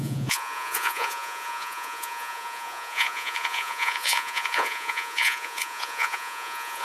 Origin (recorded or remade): remade